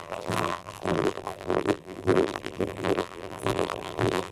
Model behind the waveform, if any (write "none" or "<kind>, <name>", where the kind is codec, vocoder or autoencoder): vocoder, BigVGAN v2